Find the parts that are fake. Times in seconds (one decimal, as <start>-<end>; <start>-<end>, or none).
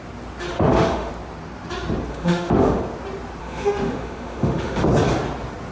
0.5-1.1; 2.1-2.8; 3.4-4.8